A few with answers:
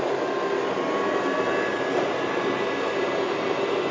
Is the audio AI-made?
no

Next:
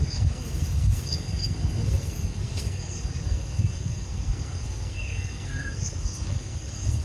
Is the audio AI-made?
yes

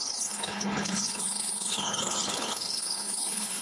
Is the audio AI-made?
yes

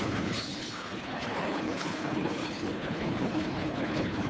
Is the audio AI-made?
yes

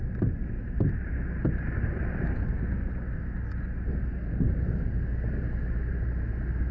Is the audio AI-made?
no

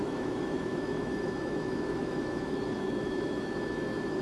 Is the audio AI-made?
yes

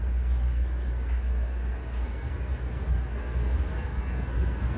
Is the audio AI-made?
yes